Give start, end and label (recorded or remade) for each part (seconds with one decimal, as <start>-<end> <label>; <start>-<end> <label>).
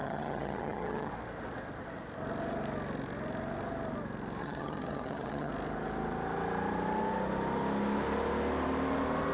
0.0-1.1 remade; 1.1-4.4 recorded; 4.4-5.5 remade; 5.5-9.3 recorded